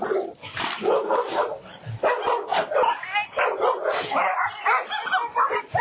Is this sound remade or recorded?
recorded